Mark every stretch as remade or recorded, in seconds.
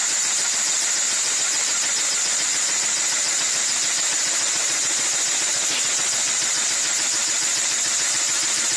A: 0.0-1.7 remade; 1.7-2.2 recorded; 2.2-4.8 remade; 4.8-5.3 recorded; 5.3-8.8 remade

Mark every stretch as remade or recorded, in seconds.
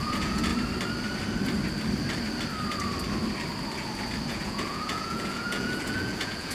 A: 0.0-0.5 remade; 0.5-4.3 recorded; 4.3-6.5 remade